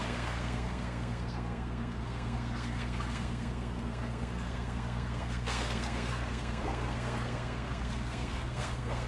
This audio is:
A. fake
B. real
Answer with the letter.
A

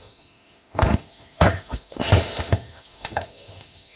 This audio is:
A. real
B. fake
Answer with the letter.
B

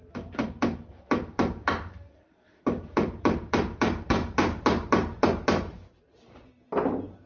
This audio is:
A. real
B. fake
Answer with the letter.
B